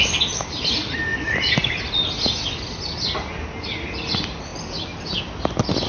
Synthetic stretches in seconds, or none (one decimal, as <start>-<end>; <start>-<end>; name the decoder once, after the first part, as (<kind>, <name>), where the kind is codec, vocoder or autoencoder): 1.1-2.8 (vocoder, BigVGAN v2)